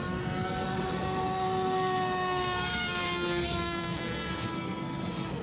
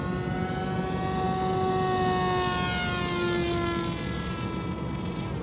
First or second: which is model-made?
first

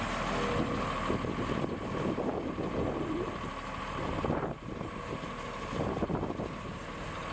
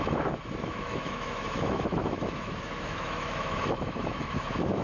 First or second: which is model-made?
second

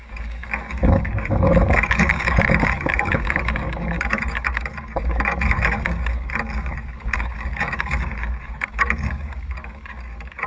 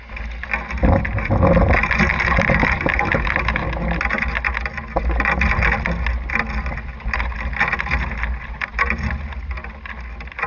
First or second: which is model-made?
first